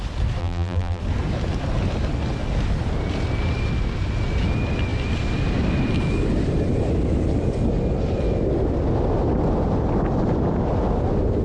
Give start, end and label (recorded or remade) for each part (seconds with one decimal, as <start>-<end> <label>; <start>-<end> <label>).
0.0-0.4 recorded; 0.4-1.0 remade; 1.0-11.4 recorded